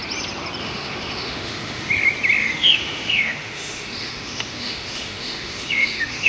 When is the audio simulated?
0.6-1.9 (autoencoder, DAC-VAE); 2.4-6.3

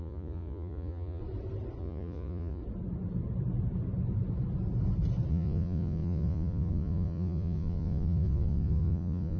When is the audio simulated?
0.0-1.2 (vocoder, Vocos); 1.8-2.6; 5.3-9.4

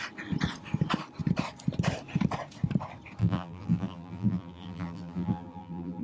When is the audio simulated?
3.2-6.0 (vocoder, BigVGAN v2)

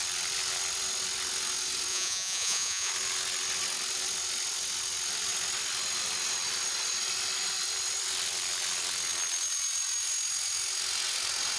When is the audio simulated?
1.9-2.9 (vocoder, Vocos)

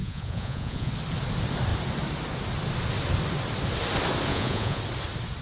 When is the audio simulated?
0.0-0.9 (vocoder, Vocos); 4.3-4.8

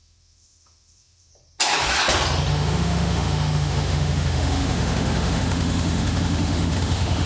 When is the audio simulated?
0.0-1.3 (autoencoder, DAC-VAE); 2.5-7.3

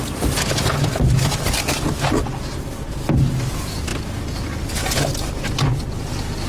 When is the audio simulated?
none

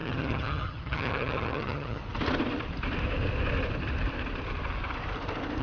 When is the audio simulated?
0.0-2.0 (vocoder, HiFi-GAN)